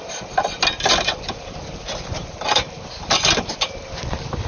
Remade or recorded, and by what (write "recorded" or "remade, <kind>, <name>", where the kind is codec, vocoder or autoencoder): recorded